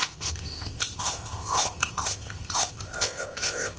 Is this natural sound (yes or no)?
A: no